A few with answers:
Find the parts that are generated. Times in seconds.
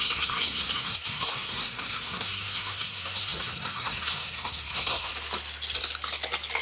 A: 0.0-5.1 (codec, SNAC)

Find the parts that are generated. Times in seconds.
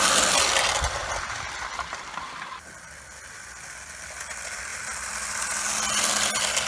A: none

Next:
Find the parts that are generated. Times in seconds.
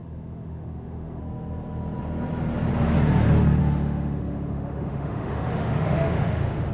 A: 0.0-1.2 (autoencoder, DAC-VAE); 3.6-6.7